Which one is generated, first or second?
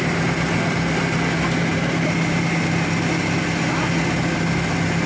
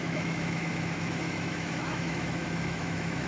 second